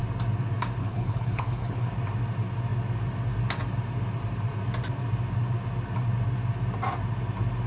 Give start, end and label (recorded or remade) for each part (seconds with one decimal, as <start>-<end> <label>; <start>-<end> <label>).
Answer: 0.0-0.8 recorded; 0.8-1.9 remade; 1.9-7.7 recorded